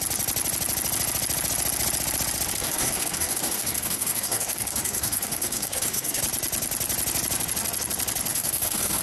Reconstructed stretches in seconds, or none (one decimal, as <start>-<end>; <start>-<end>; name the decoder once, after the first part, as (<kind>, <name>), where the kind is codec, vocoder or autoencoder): 2.6-6.2 (codec, DAC); 8.3-9.0